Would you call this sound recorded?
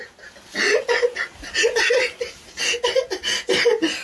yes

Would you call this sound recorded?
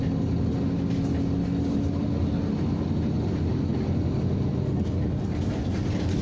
yes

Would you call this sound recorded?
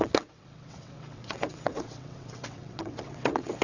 no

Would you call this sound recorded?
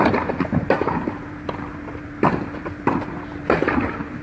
yes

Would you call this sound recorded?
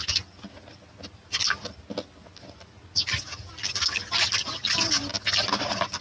yes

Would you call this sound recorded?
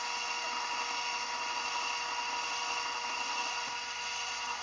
yes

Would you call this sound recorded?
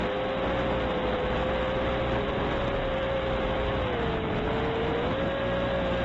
yes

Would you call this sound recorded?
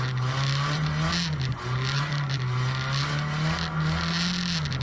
yes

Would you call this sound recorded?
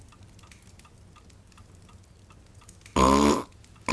yes